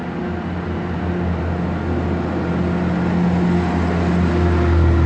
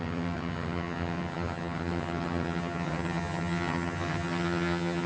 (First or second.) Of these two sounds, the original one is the first